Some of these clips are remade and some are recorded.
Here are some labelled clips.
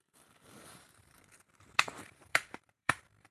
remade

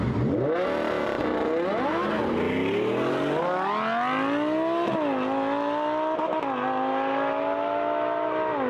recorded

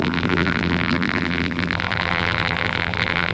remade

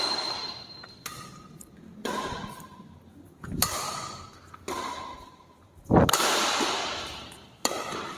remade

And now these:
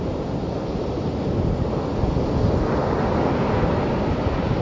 recorded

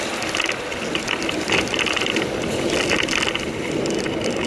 recorded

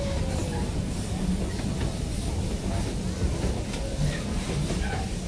recorded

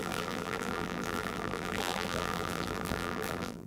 remade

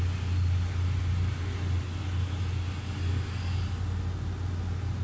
recorded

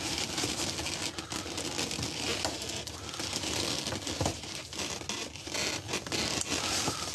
recorded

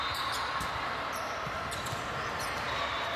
recorded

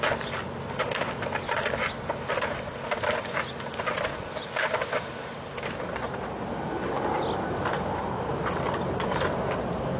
recorded